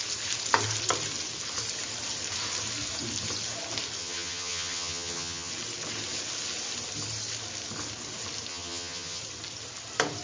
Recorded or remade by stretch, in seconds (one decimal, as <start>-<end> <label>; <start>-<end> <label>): 0.0-4.0 recorded; 4.0-5.5 remade; 5.5-8.5 recorded; 8.5-9.2 remade; 9.2-10.2 recorded